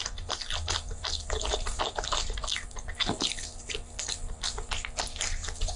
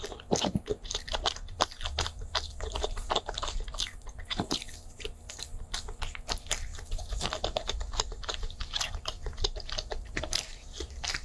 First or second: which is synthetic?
second